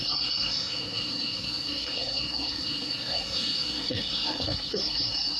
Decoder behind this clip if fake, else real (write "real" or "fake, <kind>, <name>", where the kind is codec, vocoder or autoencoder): fake, codec, SNAC